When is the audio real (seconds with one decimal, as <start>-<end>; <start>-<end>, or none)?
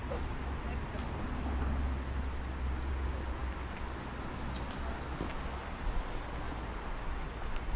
0.0-7.8